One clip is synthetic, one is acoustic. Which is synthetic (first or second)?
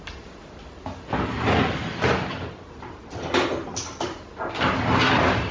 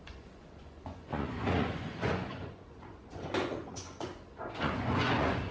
second